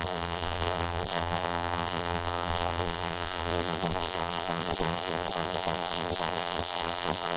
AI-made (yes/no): yes